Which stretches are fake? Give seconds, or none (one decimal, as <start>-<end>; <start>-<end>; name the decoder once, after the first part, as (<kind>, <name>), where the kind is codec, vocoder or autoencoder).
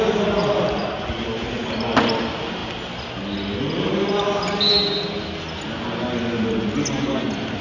none